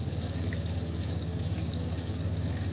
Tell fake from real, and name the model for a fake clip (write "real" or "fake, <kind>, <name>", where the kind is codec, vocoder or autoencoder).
fake, codec, DAC